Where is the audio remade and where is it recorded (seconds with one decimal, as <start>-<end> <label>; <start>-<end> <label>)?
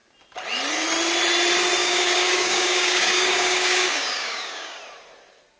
0.0-1.8 recorded; 1.8-4.8 remade; 4.8-5.6 recorded